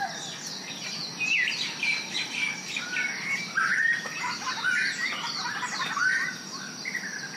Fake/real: real